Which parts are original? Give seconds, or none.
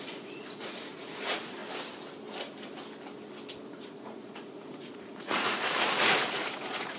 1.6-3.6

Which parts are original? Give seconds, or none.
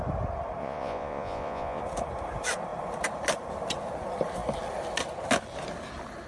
0.0-0.6; 1.8-6.3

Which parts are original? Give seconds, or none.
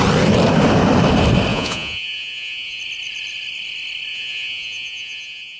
0.0-1.5; 2.8-4.1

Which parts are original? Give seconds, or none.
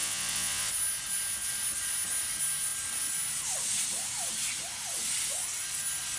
0.7-6.2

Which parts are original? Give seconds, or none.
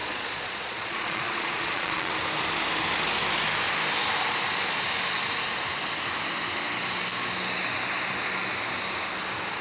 2.1-9.6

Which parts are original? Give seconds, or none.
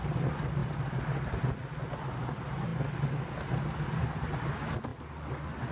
0.0-5.7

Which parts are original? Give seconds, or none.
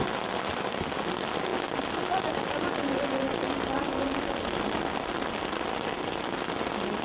0.0-7.0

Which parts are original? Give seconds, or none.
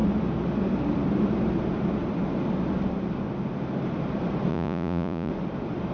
0.0-4.5; 5.3-5.9